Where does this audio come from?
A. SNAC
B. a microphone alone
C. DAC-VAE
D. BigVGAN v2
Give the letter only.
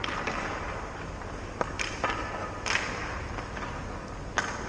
B